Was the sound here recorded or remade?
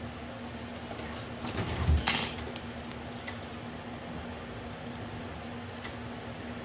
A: recorded